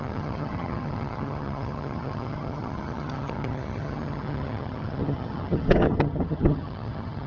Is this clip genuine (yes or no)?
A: no